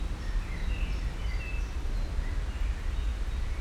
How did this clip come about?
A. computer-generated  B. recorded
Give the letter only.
B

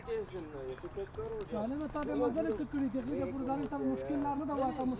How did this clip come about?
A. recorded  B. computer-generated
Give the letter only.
A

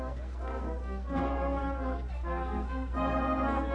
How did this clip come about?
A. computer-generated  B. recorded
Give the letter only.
A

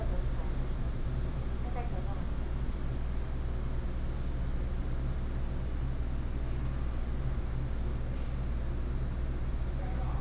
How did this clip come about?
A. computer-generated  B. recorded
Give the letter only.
B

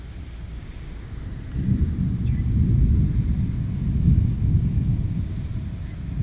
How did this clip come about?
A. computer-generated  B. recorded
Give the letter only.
B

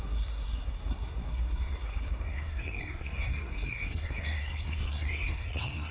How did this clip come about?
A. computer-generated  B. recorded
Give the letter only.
A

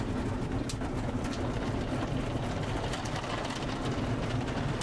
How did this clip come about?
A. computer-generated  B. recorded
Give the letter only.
B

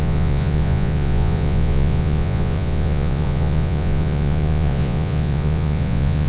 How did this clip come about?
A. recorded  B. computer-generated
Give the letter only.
B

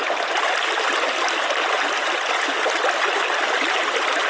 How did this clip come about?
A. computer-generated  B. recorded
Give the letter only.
A